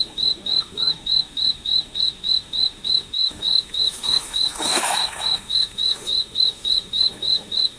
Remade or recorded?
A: remade